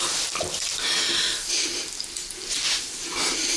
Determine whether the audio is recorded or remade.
remade